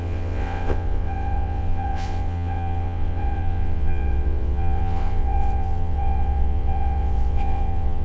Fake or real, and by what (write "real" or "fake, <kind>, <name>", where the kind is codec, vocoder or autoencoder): fake, vocoder, WaveNeXt